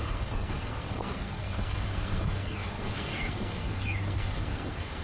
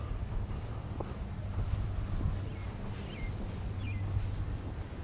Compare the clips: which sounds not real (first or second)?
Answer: first